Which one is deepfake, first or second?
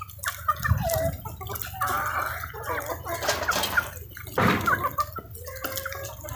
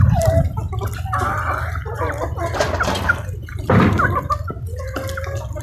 second